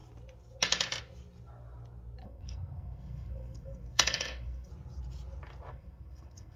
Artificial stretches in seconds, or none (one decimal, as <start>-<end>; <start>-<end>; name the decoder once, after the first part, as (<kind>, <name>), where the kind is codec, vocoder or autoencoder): 2.2-4.7 (codec, SNAC); 5.7-6.6